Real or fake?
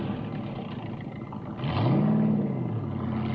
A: real